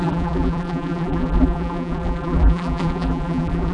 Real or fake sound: fake